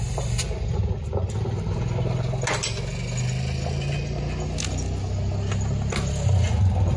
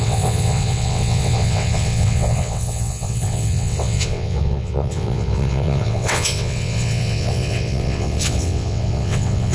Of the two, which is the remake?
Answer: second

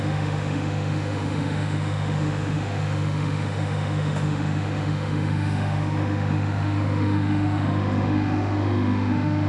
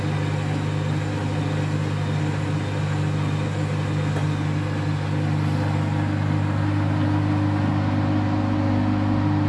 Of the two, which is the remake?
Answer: first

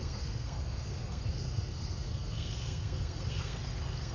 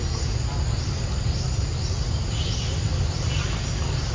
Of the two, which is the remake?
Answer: first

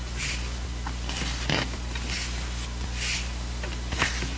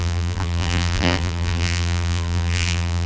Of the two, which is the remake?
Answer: second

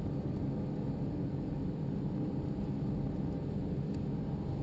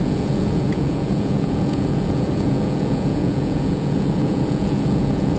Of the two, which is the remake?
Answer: second